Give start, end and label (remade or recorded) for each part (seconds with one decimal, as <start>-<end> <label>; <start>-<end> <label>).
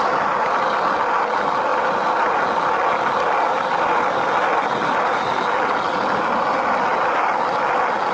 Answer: 0.0-8.1 recorded